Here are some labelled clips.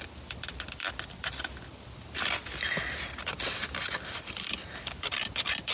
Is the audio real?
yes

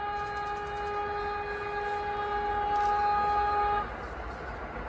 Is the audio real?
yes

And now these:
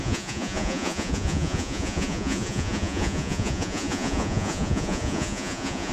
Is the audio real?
no